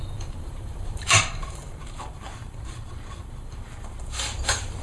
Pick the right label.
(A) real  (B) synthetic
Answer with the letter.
B